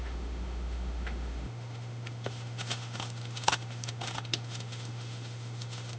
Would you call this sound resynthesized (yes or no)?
yes